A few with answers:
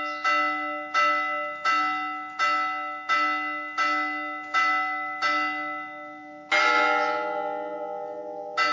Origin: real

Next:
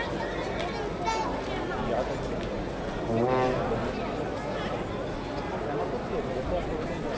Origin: real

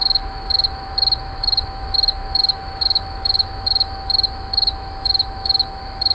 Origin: fake